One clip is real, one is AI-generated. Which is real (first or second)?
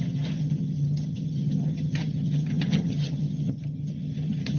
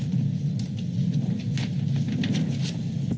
second